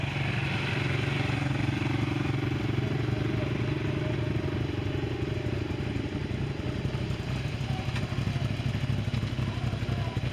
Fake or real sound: real